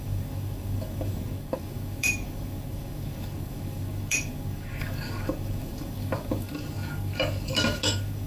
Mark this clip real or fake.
fake